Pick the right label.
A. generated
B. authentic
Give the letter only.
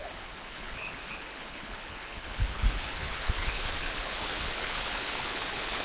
A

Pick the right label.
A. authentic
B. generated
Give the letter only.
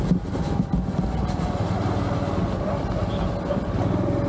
A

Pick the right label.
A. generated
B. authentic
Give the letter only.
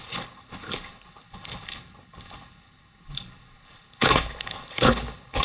A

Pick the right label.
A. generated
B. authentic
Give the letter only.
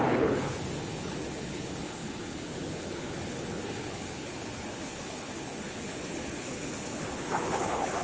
A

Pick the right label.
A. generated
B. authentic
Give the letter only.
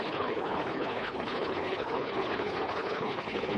A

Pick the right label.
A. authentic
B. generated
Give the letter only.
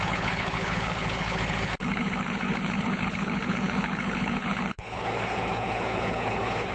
B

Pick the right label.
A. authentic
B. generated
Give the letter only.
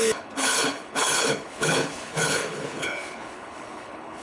B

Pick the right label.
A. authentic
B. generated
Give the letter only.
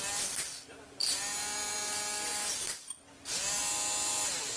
A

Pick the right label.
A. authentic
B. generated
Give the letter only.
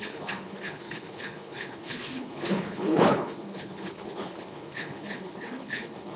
B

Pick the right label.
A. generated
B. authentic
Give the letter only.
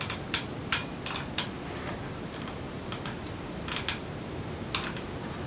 B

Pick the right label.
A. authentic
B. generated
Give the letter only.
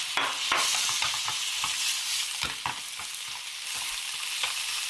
A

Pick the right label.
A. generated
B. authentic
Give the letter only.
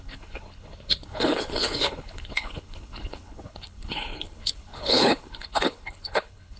A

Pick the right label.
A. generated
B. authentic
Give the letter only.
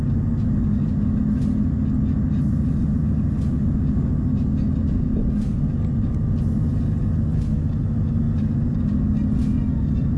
B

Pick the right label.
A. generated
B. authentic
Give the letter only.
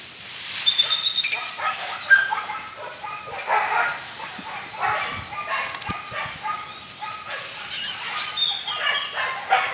B